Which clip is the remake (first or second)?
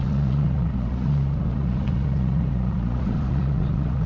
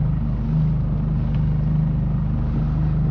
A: first